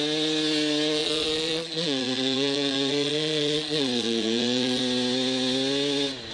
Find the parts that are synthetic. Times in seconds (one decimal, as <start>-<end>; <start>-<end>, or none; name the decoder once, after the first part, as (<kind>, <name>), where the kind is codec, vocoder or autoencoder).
1.0-4.8 (vocoder, Vocos)